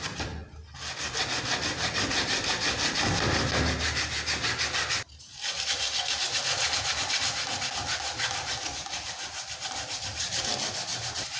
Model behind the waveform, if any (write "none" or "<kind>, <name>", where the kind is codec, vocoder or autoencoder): none